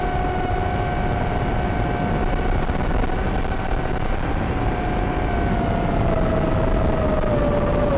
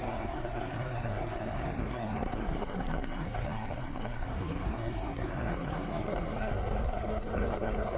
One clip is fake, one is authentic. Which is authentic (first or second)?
first